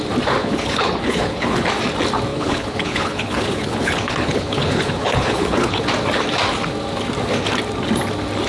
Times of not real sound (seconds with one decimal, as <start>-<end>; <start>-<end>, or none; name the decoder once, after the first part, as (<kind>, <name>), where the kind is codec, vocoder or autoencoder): 0.4-1.7 (codec, HILCodec); 2.3-5.8